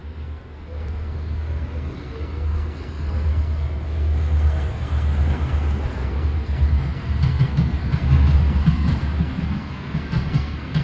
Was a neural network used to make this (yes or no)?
yes